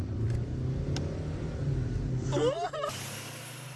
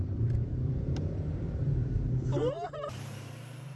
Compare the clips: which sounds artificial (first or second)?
second